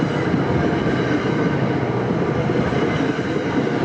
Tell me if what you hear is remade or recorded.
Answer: recorded